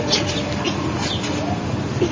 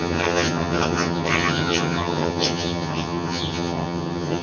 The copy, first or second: second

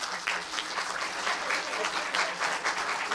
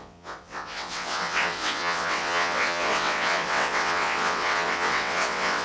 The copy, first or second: second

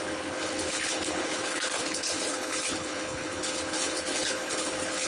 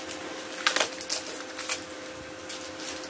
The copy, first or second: first